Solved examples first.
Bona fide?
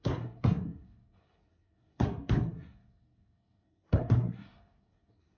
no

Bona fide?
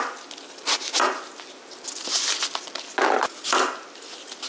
yes